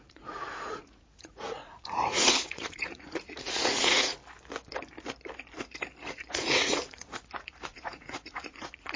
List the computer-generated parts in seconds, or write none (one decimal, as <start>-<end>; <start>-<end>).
0.0-4.2; 6.0-9.0